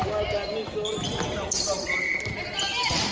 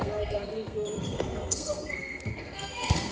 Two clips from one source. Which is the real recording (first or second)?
first